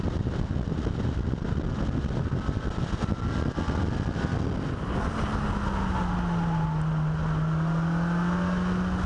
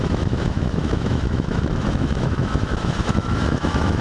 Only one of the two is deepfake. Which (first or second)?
second